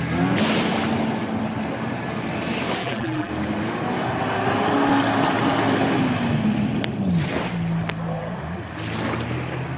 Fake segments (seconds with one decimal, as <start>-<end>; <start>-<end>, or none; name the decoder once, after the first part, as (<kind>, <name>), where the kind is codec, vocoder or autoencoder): 2.8-3.3 (vocoder, BigVGAN v2)